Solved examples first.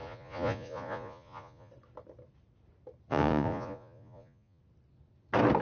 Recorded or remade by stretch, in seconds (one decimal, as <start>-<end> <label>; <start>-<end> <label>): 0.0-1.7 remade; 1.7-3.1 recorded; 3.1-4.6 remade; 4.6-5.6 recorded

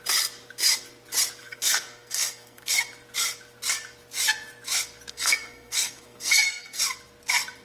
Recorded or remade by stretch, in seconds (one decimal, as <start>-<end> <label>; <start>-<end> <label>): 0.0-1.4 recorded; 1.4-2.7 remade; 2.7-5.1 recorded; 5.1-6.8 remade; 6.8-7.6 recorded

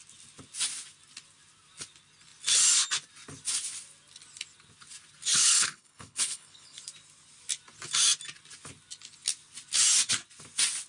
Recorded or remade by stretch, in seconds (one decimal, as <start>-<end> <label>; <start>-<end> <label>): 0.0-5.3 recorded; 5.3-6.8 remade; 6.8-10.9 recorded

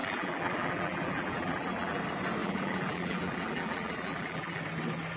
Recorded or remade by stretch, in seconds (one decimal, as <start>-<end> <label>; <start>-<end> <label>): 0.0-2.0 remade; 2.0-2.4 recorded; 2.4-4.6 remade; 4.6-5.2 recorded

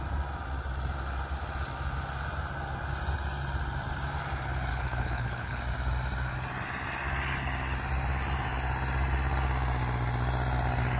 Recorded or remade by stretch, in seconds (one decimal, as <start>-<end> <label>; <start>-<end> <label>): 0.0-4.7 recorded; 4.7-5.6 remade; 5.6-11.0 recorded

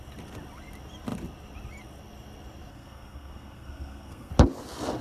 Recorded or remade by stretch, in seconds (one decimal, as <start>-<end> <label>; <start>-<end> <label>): 0.0-2.7 recorded; 2.7-4.3 remade; 4.3-5.0 recorded

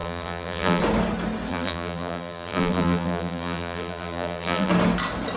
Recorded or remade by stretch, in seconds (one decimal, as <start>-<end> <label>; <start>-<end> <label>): 0.0-0.8 remade; 0.8-1.5 recorded; 1.5-4.7 remade; 4.7-5.4 recorded

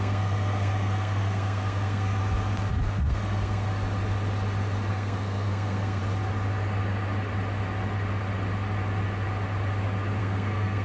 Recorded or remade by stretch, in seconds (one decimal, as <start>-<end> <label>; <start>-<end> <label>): 0.0-2.2 remade; 2.2-2.8 recorded; 2.8-3.7 remade; 3.7-4.9 recorded; 4.9-6.0 remade; 6.0-10.2 recorded; 10.2-10.8 remade